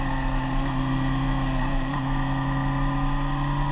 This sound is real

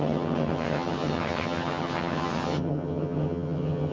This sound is fake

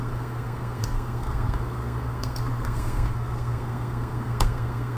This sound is fake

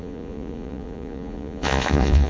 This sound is fake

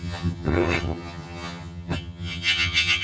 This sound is fake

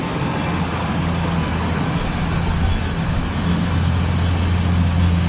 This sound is real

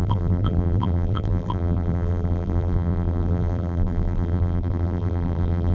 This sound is fake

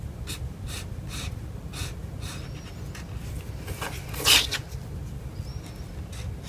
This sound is real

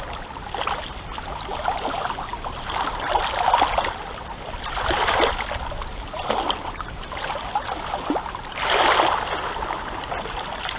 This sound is real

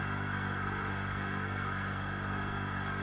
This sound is fake